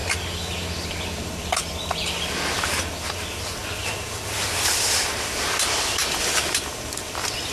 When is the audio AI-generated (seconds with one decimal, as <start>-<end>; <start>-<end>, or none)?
1.3-7.5